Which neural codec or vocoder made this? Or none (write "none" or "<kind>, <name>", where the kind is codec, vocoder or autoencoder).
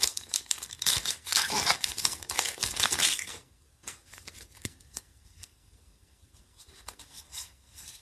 codec, SNAC